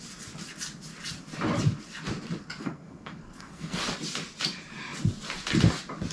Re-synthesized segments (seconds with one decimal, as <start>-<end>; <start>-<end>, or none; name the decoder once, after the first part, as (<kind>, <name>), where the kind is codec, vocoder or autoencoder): 2.6-3.8 (codec, SNAC)